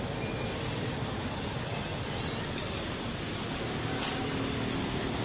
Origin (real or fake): real